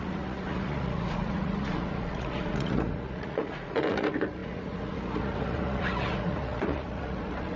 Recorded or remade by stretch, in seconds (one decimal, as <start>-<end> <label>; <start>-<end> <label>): 0.0-7.6 remade